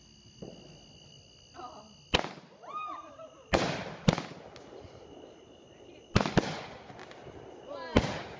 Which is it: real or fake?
real